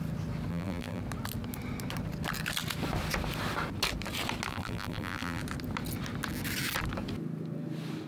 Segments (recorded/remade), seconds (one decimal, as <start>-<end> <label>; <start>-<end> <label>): 0.0-0.5 recorded; 0.5-1.0 remade; 1.0-4.5 recorded; 4.5-5.4 remade; 5.4-8.1 recorded